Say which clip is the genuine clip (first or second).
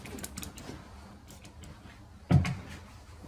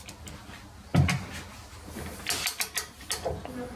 second